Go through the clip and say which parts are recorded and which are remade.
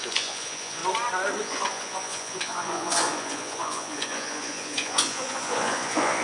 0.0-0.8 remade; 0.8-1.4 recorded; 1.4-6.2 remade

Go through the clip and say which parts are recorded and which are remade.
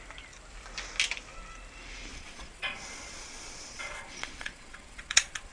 0.0-2.1 recorded; 2.1-5.5 remade